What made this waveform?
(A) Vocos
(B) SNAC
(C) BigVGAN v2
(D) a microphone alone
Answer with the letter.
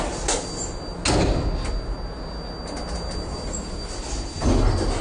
D